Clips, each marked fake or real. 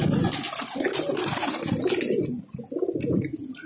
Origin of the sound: real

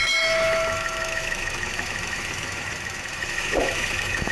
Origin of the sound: fake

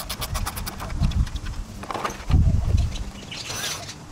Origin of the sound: real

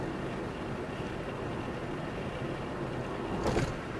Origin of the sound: real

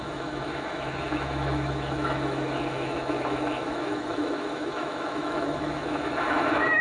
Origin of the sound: fake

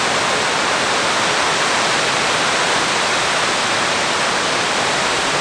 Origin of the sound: real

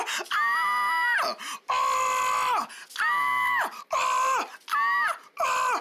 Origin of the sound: real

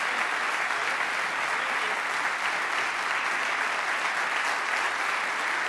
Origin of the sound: real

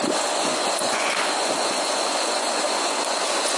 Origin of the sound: fake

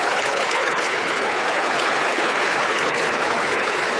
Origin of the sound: fake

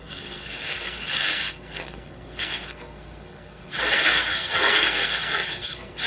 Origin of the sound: fake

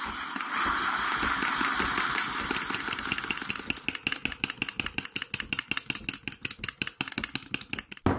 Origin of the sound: real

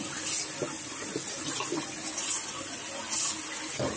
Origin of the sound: real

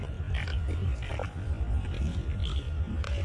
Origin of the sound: real